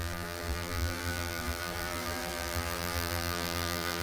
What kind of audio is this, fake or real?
fake